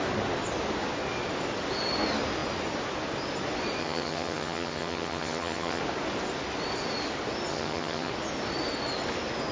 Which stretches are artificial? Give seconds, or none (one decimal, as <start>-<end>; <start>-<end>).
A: 3.8-5.8; 7.5-8.1